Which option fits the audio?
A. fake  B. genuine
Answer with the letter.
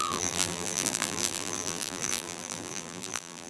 A